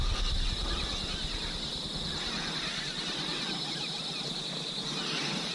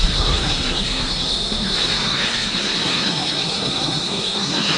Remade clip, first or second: second